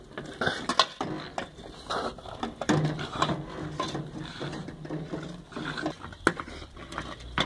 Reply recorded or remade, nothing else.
recorded